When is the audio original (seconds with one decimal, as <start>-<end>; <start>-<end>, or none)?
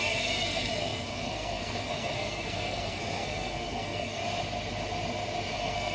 4.2-5.5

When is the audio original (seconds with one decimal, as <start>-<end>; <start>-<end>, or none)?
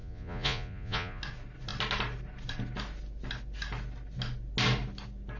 1.2-5.4